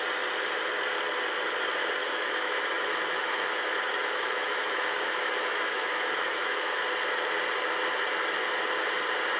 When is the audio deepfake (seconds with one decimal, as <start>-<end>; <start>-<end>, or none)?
2.0-6.8